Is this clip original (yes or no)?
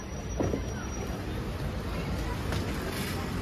yes